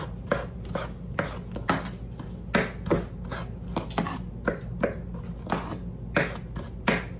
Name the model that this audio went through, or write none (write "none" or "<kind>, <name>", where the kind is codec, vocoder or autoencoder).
none